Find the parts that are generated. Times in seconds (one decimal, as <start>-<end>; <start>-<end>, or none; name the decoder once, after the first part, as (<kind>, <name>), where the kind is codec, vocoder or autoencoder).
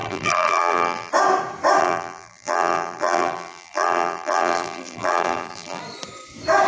0.0-1.1 (vocoder, BigVGAN v2); 1.8-5.8